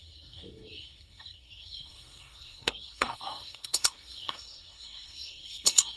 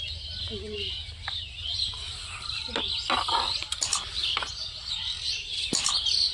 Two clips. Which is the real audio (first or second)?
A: second